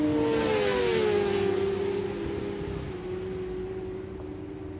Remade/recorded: recorded